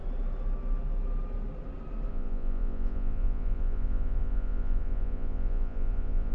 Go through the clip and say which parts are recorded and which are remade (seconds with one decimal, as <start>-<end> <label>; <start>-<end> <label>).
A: 0.0-2.1 recorded; 2.1-6.3 remade